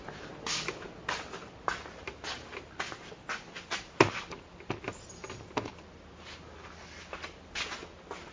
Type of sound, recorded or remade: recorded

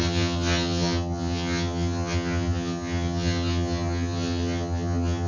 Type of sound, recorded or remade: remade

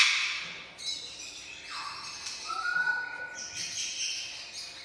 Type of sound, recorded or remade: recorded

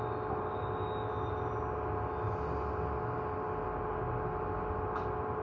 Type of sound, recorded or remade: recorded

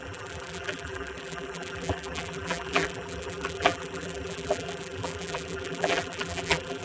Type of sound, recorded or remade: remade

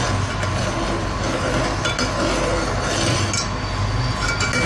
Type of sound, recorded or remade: recorded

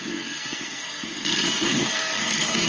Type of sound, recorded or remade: remade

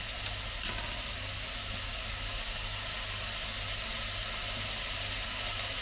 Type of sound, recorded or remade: recorded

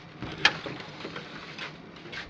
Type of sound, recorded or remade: recorded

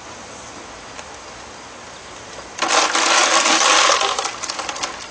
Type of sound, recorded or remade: recorded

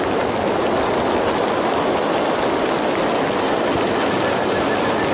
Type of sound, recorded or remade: recorded